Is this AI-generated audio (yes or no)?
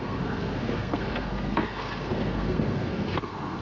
yes